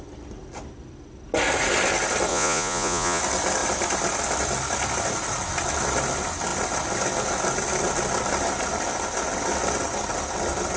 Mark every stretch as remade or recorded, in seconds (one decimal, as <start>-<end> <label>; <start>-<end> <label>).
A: 0.0-2.3 recorded; 2.3-3.2 remade; 3.2-10.8 recorded